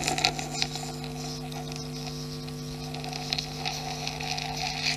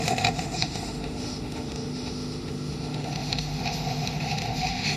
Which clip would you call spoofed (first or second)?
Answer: second